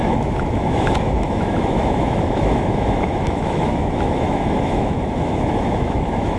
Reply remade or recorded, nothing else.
remade